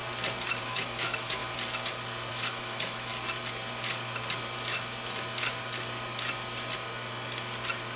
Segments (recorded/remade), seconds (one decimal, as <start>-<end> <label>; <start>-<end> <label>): 0.0-0.6 recorded; 0.6-1.4 remade; 1.4-2.3 recorded; 2.3-3.1 remade; 3.1-8.0 recorded